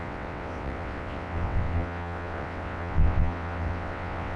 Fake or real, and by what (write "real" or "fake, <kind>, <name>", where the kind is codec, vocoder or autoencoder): fake, vocoder, WaveNeXt